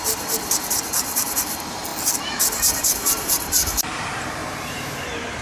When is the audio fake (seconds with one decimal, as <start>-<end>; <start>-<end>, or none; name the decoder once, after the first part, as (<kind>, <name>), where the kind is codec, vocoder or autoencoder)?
0.0-1.9 (vocoder, BigVGAN v2); 2.4-5.4